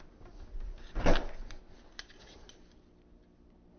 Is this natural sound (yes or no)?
yes